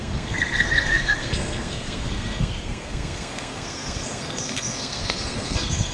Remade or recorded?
remade